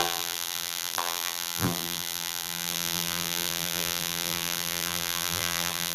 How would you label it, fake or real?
fake